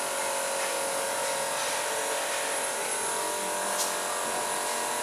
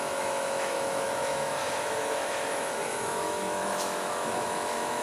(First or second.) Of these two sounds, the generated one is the second